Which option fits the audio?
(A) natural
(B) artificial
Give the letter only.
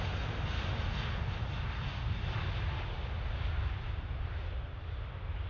A